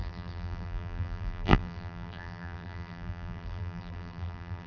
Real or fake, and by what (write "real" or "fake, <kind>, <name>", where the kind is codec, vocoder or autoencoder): fake, vocoder, BigVGAN v2